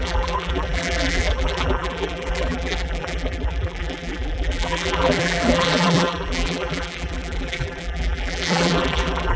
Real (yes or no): no